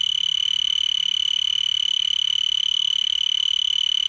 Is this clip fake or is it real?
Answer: real